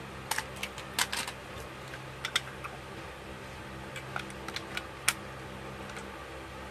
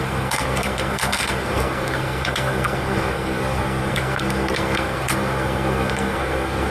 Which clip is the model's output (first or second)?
second